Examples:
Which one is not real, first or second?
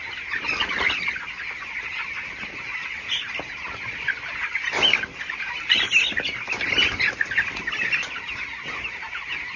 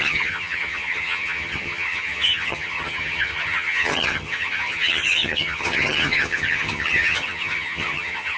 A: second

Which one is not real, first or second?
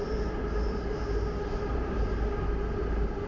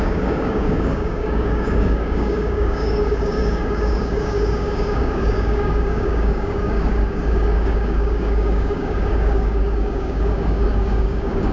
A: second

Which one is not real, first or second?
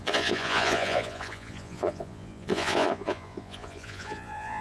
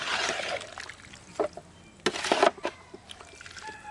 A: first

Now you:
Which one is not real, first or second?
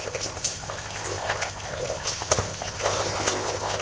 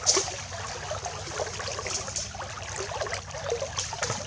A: first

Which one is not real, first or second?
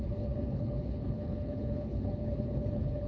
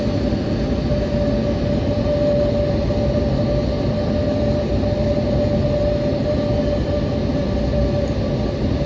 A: first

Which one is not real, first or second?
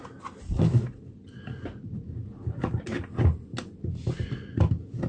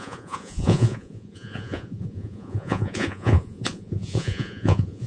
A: second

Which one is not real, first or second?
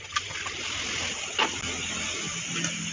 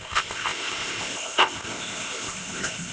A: second